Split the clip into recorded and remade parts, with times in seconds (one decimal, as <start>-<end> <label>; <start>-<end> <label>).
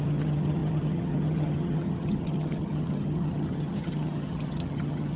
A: 0.0-5.2 remade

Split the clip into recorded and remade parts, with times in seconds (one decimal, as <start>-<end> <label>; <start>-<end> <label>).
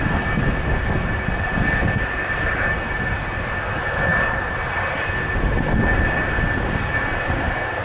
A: 0.0-7.8 recorded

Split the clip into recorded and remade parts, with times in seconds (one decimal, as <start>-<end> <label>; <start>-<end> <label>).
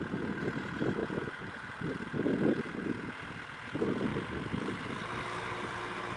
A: 0.0-1.0 recorded; 1.0-1.7 remade; 1.7-6.2 recorded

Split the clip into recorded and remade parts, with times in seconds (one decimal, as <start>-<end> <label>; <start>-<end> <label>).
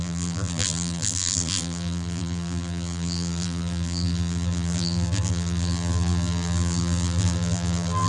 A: 0.0-8.1 remade